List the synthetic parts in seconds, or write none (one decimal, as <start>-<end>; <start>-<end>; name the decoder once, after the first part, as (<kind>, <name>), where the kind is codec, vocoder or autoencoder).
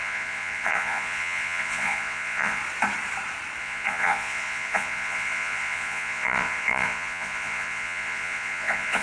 0.0-2.6 (vocoder, Vocos); 3.6-9.0